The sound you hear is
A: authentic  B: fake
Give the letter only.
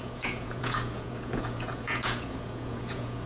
B